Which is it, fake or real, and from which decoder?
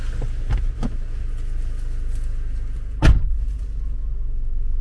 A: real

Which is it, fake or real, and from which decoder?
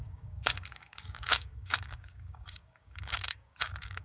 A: fake, codec, DAC